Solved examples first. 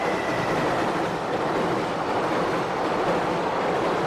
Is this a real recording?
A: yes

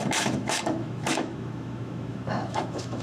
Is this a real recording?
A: no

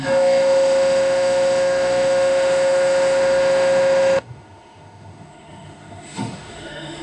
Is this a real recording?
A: no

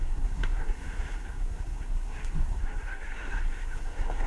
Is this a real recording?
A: no